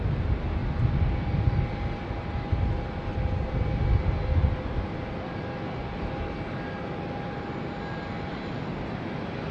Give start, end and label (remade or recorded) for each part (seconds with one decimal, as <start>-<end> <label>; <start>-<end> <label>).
0.0-9.5 recorded

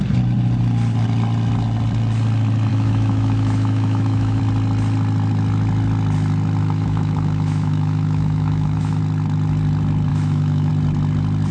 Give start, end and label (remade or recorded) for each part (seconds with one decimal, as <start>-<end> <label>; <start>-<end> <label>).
0.0-2.7 recorded; 2.7-4.4 remade; 4.4-6.6 recorded; 6.6-9.0 remade; 9.0-10.1 recorded; 10.1-10.7 remade; 10.7-11.5 recorded